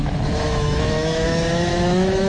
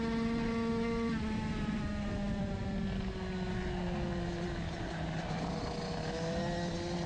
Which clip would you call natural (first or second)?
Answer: second